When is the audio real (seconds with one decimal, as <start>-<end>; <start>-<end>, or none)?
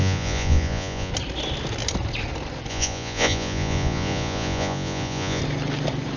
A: 1.1-2.7; 5.4-6.2